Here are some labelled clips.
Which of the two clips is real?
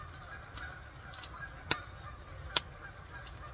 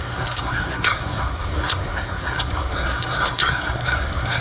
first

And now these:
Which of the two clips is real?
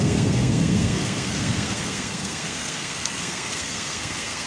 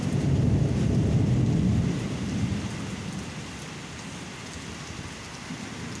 second